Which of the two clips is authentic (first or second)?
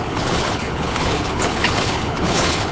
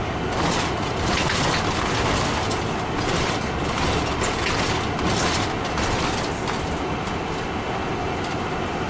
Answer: second